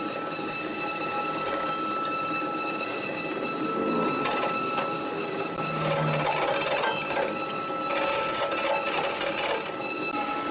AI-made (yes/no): no